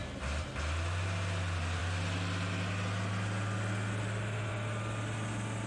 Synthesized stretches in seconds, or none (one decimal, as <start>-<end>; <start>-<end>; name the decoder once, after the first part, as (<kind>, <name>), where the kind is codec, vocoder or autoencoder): none